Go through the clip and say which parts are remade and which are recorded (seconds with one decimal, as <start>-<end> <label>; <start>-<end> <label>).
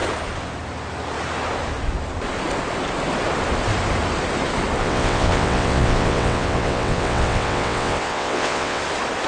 0.0-4.8 recorded; 4.8-8.8 remade; 8.8-9.3 recorded